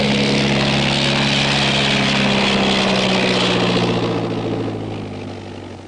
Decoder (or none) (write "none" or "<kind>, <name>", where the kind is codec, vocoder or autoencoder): none